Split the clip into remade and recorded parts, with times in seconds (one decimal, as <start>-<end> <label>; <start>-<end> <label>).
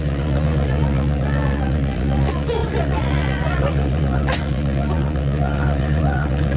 0.0-6.6 remade